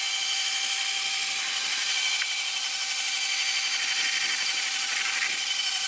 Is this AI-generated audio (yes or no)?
no